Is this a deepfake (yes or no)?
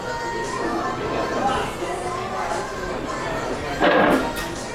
no